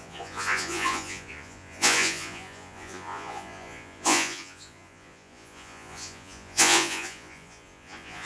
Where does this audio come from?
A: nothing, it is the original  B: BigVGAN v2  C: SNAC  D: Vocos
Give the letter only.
D